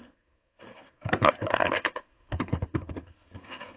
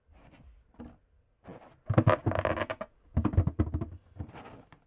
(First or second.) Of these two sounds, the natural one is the second